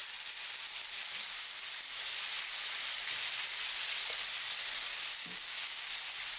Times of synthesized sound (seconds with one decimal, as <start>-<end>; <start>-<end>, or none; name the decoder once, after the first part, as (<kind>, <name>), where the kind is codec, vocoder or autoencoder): 5.2-5.9 (codec, DAC)